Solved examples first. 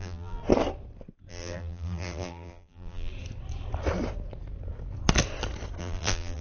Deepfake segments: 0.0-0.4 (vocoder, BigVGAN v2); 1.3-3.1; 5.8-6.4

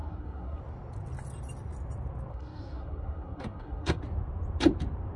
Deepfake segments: 0.0-0.6 (codec, SNAC); 2.3-4.0

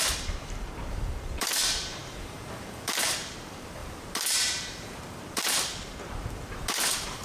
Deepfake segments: 0.0-7.2 (vocoder, BigVGAN v2)

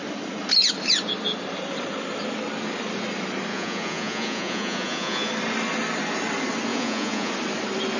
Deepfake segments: 3.5-5.3 (vocoder, Vocos); 6.7-7.3